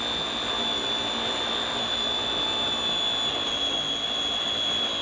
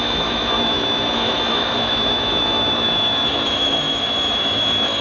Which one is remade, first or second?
second